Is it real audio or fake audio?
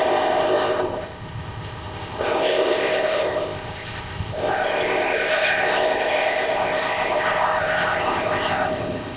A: fake